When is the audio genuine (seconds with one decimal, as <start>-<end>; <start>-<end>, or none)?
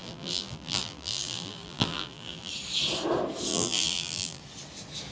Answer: 2.5-3.5; 4.4-5.1